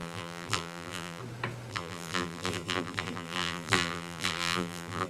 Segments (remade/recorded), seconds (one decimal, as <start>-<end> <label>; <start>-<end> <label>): 0.0-1.2 remade; 1.2-1.7 recorded; 1.7-5.1 remade